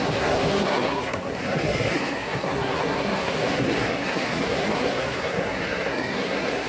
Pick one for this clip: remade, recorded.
remade